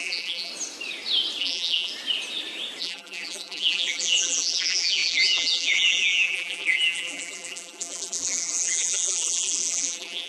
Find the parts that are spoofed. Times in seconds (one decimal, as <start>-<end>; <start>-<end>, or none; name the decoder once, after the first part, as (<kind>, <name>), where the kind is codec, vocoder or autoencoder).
0.0-0.5 (vocoder, BigVGAN v2); 1.4-1.9; 2.8-10.3